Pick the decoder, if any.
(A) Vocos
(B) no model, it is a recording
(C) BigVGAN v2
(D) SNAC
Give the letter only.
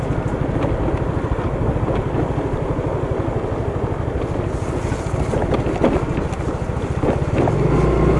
B